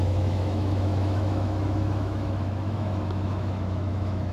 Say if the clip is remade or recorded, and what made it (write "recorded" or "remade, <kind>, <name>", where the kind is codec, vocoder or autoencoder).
remade, autoencoder, DAC-VAE